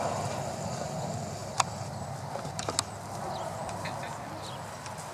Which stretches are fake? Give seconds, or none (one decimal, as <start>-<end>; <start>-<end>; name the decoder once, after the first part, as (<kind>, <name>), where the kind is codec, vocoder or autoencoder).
none